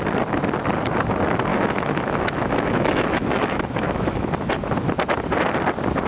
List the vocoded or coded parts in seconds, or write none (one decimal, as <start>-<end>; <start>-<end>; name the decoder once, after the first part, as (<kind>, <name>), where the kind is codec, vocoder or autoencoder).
1.5-4.5 (autoencoder, DAC-VAE)